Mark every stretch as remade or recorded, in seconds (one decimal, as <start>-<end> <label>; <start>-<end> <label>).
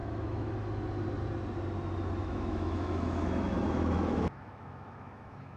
0.0-0.5 remade; 0.5-2.2 recorded; 2.2-5.6 remade